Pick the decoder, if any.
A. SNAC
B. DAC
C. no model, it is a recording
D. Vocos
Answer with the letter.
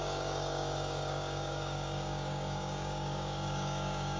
B